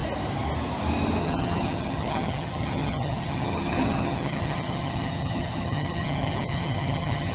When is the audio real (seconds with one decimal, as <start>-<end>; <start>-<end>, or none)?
0.0-1.2